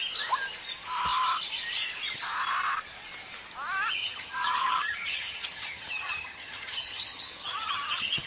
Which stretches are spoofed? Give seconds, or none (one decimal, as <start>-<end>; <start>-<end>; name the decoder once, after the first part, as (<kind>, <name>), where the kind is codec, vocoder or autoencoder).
4.0-8.3 (vocoder, HiFi-GAN)